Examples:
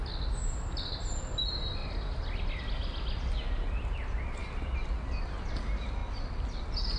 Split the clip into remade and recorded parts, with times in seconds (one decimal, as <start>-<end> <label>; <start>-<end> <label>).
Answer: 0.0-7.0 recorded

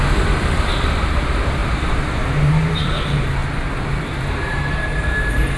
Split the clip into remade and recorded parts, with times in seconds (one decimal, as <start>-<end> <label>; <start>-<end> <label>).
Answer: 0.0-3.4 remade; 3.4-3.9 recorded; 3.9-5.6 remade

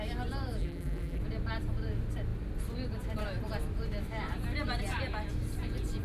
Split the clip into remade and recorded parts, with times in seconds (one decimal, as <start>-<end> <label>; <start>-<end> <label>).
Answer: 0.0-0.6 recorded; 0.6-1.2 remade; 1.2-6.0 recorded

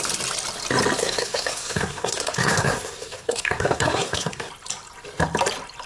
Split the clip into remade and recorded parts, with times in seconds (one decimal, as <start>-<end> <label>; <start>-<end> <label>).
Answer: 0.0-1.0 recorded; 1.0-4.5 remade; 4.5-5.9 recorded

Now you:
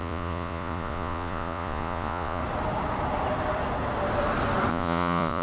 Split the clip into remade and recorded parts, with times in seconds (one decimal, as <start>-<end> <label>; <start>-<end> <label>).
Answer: 0.0-2.4 remade; 2.4-4.7 recorded; 4.7-5.4 remade

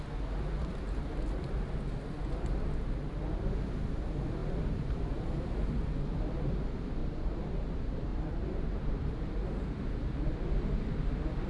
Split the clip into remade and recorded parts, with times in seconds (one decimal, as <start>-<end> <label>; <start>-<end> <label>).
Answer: 0.0-0.6 recorded; 0.6-1.7 remade; 1.7-4.4 recorded; 4.4-6.5 remade; 6.5-7.0 recorded; 7.0-7.6 remade; 7.6-8.1 recorded; 8.1-8.8 remade; 8.8-11.5 recorded

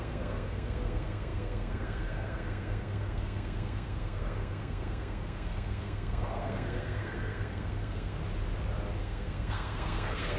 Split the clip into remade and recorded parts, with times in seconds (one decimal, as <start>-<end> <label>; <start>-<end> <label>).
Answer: 0.0-8.2 remade; 8.2-9.0 recorded; 9.0-10.4 remade